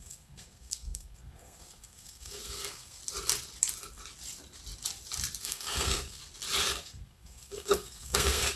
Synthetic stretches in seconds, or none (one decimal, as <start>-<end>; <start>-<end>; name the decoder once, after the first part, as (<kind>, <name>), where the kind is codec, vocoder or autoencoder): 0.0-3.0 (codec, SNAC); 5.4-6.2; 6.8-8.6